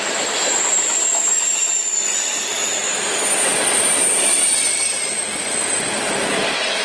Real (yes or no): yes